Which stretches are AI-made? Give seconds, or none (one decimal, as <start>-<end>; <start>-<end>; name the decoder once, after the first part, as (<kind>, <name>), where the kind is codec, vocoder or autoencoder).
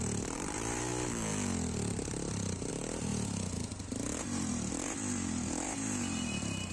0.0-0.9 (vocoder, BigVGAN v2); 2.7-3.1; 4.2-6.7